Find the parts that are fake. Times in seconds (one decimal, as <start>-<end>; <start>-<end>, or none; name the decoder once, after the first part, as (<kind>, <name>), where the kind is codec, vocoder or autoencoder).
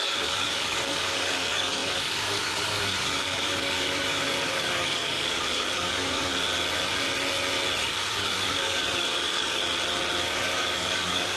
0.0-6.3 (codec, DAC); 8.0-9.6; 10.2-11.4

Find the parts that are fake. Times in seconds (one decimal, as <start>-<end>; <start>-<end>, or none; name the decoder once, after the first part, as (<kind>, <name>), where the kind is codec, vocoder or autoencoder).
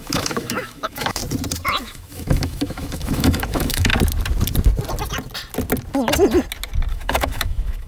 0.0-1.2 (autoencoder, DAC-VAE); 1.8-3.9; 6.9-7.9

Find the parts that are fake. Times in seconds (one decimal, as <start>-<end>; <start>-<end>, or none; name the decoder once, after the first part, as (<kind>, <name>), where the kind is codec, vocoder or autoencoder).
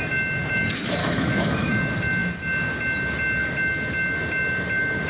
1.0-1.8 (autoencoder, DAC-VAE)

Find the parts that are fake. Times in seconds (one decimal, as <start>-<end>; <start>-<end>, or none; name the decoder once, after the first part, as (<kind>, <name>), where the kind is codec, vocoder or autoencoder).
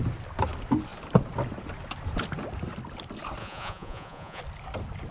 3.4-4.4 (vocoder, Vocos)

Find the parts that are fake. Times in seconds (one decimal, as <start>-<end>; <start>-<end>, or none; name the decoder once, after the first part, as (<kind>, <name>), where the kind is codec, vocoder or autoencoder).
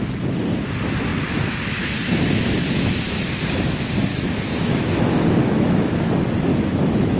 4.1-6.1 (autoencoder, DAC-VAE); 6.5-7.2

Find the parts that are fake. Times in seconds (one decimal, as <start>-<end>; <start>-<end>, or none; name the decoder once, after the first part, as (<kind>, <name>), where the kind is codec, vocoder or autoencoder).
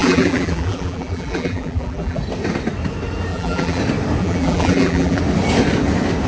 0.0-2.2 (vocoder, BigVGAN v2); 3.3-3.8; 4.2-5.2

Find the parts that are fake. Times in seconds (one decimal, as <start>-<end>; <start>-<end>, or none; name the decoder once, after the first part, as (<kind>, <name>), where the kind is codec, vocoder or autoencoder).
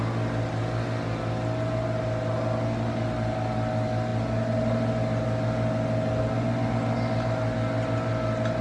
none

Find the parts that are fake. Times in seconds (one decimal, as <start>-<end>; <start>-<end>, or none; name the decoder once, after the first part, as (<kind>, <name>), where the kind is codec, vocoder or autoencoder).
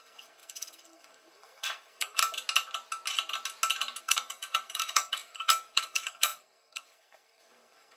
0.0-2.2 (codec, SNAC); 4.0-8.0